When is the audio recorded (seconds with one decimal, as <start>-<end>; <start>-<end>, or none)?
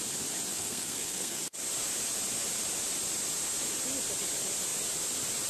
0.0-0.5; 1.4-5.5